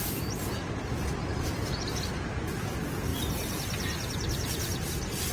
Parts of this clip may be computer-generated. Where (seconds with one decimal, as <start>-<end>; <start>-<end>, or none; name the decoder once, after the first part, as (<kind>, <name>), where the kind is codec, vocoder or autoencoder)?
1.2-1.8 (vocoder, BigVGAN v2)